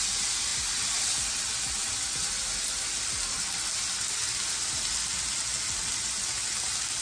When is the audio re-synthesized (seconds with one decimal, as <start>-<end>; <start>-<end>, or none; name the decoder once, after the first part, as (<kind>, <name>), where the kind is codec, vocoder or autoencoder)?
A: none